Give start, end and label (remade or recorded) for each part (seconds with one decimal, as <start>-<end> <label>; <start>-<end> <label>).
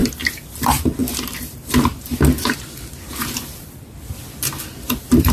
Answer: 0.0-0.5 recorded; 0.5-1.0 remade; 1.0-3.3 recorded; 3.3-5.3 remade